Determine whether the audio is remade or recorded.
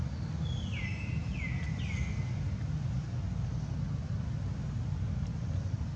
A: recorded